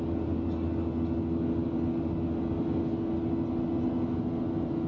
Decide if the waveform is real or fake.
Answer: real